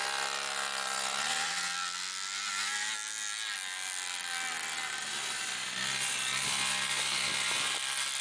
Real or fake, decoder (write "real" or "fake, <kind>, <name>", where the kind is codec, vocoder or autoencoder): real